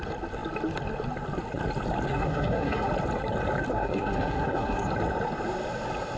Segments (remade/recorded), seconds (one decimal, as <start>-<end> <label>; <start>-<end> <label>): 0.0-2.1 recorded; 2.1-2.9 remade; 2.9-3.7 recorded; 3.7-4.9 remade; 4.9-6.2 recorded